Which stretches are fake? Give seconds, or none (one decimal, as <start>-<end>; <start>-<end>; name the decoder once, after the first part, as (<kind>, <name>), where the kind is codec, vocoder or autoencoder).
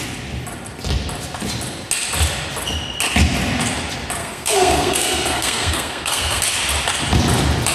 4.2-6.4 (codec, SNAC)